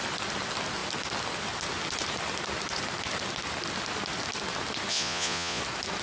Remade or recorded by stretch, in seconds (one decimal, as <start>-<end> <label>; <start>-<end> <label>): 0.0-4.9 recorded; 4.9-5.6 remade; 5.6-6.0 recorded